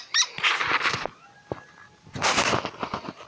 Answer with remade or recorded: recorded